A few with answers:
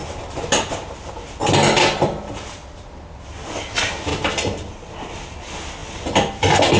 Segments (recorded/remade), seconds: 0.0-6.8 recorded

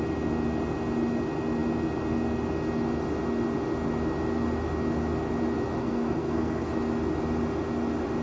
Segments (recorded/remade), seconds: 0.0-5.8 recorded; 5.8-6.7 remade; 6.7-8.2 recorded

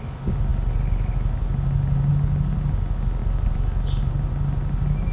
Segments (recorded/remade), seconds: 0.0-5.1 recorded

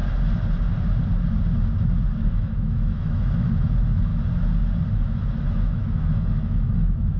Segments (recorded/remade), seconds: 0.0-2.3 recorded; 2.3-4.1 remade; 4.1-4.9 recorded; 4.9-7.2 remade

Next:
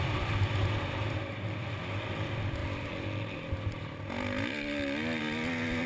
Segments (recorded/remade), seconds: 0.0-5.9 recorded

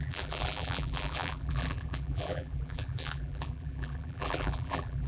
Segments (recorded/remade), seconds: 0.0-5.1 remade

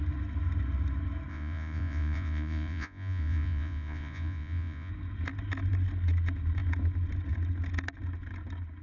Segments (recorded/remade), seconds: 0.0-1.3 recorded; 1.3-4.9 remade; 4.9-8.8 recorded